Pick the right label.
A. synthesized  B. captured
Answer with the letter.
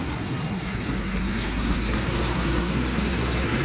A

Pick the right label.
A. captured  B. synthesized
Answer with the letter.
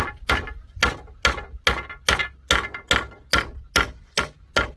A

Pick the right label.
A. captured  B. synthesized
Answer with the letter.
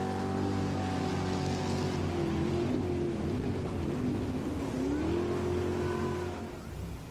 A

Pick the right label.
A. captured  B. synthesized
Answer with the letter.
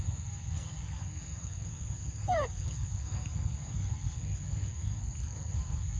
B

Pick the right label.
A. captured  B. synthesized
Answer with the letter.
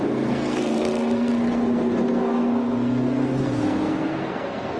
B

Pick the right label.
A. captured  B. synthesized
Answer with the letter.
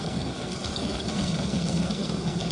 B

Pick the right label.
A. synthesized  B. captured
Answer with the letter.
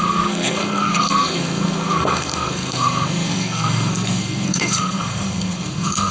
A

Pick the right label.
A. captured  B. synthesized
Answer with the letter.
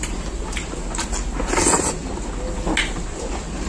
A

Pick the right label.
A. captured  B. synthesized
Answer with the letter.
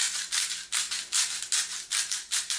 A